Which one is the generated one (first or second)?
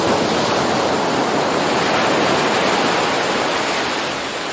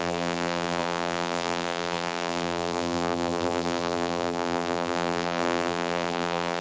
second